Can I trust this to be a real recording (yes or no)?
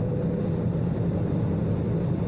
yes